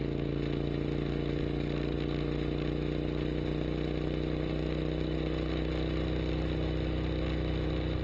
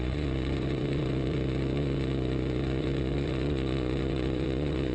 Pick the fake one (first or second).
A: second